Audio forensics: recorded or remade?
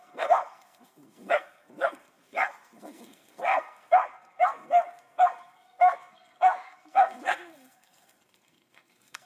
remade